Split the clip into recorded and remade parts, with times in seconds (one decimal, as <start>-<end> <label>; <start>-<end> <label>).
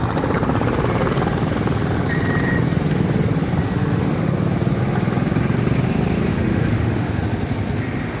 0.0-3.6 recorded; 3.6-4.2 remade; 4.2-6.3 recorded; 6.3-7.2 remade; 7.2-8.2 recorded